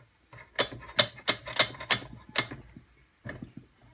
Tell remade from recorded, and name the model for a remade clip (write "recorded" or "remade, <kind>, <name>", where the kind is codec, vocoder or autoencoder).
recorded